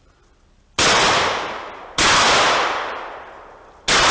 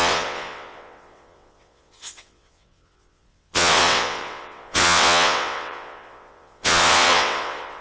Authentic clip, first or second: first